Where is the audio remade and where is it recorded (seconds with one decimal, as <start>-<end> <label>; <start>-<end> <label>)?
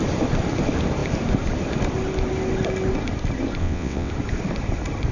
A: 0.0-3.6 recorded; 3.6-4.1 remade; 4.1-5.1 recorded